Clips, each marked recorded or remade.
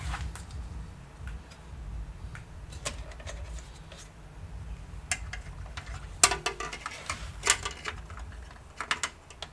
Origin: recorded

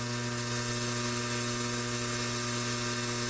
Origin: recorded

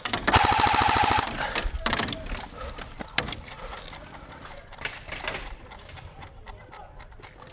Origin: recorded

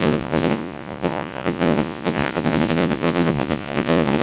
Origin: remade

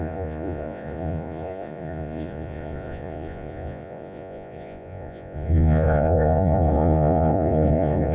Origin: remade